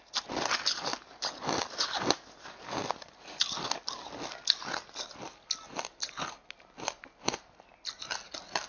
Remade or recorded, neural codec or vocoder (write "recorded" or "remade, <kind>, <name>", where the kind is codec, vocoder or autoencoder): recorded